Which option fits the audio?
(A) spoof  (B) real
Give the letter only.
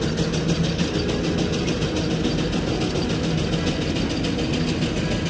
B